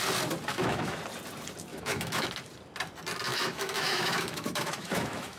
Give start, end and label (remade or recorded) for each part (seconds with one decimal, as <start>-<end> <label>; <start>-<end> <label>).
0.0-0.5 recorded; 0.5-1.0 remade; 1.0-1.7 recorded; 1.7-2.3 remade; 2.3-3.3 recorded; 3.3-5.4 remade